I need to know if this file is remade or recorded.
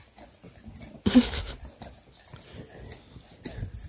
recorded